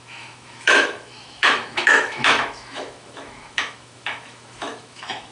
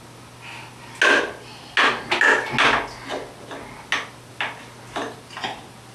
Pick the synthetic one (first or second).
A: first